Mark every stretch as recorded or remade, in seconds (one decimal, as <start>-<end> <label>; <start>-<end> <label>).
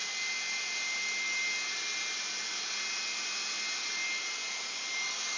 0.0-5.4 recorded